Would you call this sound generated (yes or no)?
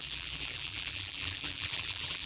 yes